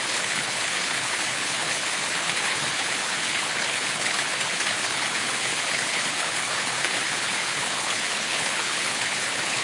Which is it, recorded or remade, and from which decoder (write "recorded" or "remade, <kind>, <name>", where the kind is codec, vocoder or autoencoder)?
remade, codec, HILCodec